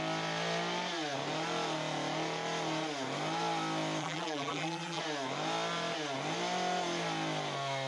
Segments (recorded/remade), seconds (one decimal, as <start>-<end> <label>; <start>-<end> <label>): 0.0-4.0 recorded; 4.0-5.0 remade; 5.0-7.9 recorded